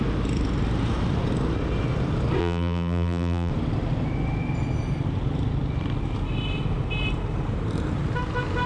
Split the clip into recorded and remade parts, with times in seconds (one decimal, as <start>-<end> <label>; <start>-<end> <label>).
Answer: 0.0-2.4 recorded; 2.4-3.5 remade; 3.5-8.7 recorded